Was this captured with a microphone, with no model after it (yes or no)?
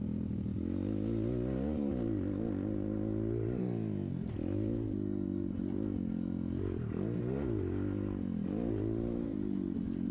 yes